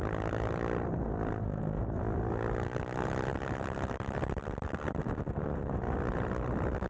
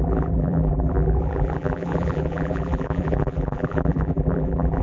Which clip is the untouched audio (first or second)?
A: first